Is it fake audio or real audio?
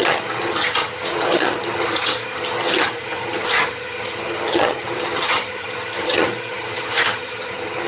fake